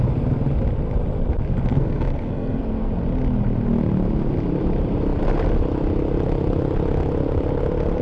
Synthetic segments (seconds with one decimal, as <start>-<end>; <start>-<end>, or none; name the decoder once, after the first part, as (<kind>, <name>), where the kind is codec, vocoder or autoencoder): 1.7-2.9 (codec, SNAC)

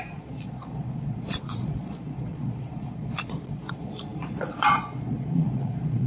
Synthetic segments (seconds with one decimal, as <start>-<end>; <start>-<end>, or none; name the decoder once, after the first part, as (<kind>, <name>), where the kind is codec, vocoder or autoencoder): 0.0-6.1 (vocoder, Vocos)

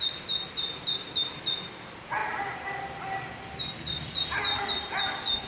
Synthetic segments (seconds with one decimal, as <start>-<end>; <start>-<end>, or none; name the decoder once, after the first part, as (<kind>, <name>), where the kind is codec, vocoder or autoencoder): none

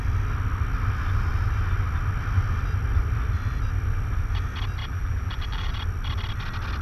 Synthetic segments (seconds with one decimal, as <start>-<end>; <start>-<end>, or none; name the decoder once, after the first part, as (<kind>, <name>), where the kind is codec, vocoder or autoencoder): 4.8-5.7 (vocoder, BigVGAN v2)